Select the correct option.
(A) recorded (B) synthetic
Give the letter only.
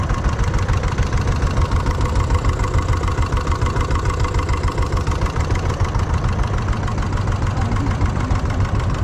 A